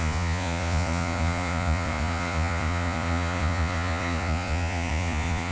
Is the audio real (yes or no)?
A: no